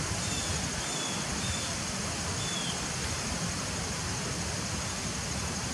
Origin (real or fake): real